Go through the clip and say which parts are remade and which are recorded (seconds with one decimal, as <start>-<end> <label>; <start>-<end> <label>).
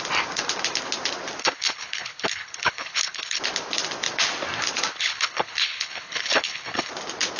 0.0-1.4 recorded; 1.4-3.4 remade; 3.4-4.9 recorded; 4.9-6.9 remade; 6.9-7.4 recorded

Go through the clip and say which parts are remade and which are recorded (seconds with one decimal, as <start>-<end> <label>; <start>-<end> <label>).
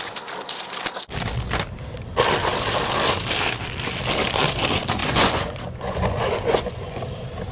0.0-5.0 recorded; 5.0-7.0 remade; 7.0-7.5 recorded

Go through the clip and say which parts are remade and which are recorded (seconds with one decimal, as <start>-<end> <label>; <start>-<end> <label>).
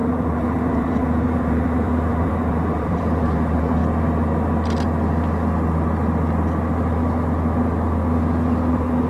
0.0-3.8 remade; 3.8-8.7 recorded; 8.7-9.1 remade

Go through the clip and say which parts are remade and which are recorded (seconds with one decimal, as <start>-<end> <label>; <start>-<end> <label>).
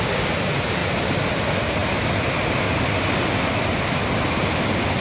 0.0-5.0 recorded